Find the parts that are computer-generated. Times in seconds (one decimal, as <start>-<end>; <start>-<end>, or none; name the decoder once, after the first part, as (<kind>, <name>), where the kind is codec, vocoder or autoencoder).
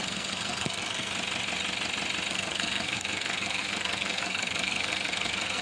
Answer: 0.0-1.1 (codec, SNAC); 2.3-5.6